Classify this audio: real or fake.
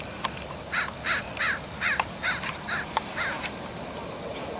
real